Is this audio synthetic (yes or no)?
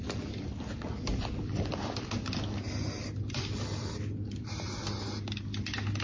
no